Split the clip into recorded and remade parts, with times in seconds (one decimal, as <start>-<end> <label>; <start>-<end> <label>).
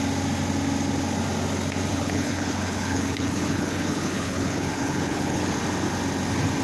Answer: 0.0-1.9 recorded; 1.9-5.6 remade; 5.6-6.6 recorded